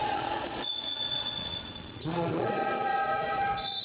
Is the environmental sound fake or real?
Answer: fake